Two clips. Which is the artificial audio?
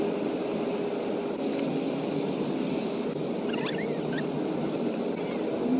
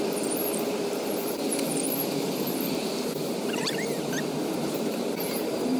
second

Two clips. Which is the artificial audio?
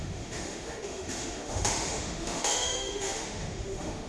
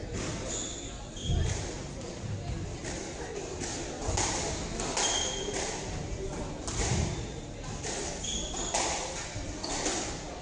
first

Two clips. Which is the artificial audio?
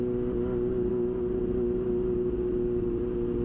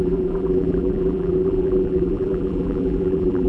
second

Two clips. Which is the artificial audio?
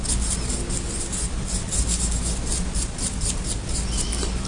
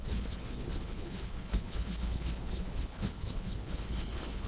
second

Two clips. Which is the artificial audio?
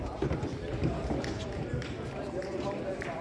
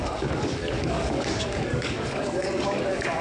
second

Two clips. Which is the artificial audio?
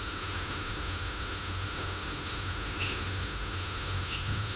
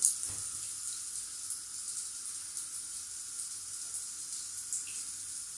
first